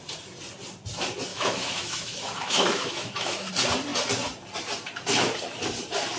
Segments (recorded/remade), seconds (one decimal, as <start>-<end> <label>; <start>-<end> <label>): 0.0-1.3 recorded; 1.3-3.5 remade; 3.5-6.2 recorded